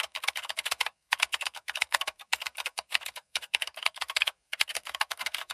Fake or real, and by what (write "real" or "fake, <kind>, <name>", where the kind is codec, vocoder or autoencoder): fake, codec, SNAC